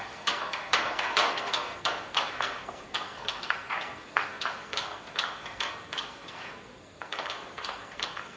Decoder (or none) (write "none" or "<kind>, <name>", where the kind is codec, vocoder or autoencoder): codec, SNAC